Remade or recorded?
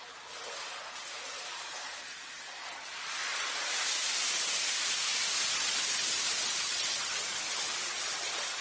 recorded